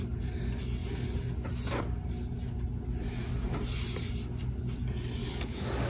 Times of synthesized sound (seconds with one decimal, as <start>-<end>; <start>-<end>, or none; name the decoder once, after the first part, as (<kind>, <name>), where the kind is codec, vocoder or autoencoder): 5.2-5.9 (codec, DAC)

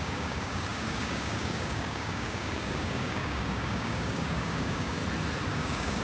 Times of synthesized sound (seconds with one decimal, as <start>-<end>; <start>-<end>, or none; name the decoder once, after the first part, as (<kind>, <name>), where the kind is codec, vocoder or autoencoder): 0.0-5.0 (codec, DAC); 5.5-6.0